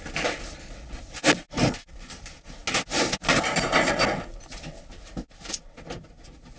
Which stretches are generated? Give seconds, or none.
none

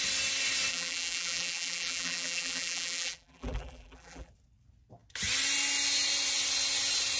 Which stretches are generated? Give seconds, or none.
0.7-4.3